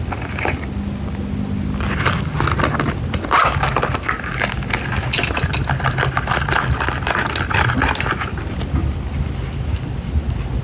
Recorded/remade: recorded